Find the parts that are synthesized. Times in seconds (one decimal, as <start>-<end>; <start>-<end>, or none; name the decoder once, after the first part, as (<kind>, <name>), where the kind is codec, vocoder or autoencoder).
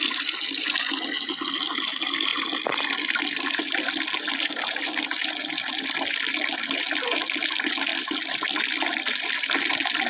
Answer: 7.9-9.6 (vocoder, BigVGAN v2)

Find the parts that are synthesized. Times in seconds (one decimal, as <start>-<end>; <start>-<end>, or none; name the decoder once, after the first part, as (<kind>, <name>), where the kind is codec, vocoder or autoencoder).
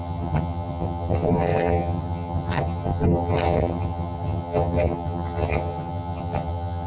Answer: 0.0-6.9 (vocoder, HiFi-GAN)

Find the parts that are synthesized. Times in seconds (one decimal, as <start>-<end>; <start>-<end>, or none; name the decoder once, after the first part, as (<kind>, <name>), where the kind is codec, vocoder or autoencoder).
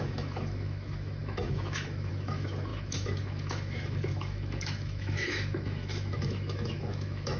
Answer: 0.0-7.4 (autoencoder, DAC-VAE)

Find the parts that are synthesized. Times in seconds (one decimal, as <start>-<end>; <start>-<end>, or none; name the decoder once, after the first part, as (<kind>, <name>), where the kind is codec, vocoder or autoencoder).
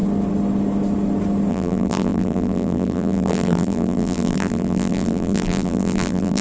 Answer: 1.5-6.4 (vocoder, BigVGAN v2)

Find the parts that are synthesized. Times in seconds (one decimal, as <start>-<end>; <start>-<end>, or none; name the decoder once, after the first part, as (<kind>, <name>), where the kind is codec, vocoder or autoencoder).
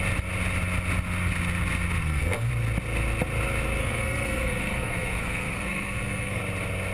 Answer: 2.0-2.5 (codec, SNAC); 3.8-6.4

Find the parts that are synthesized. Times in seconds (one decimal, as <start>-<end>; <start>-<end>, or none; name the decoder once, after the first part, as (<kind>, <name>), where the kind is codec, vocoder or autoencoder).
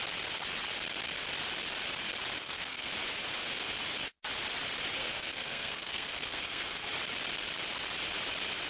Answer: 2.4-2.9 (codec, SNAC); 5.0-6.9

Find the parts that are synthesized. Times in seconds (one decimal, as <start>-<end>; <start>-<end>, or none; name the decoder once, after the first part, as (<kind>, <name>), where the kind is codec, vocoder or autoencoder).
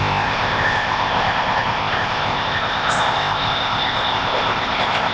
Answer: 0.0-5.1 (codec, ZipCodec)